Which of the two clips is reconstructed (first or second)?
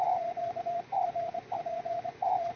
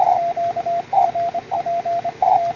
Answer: first